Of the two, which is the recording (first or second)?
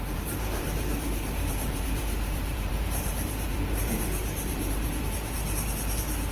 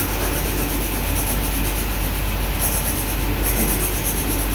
second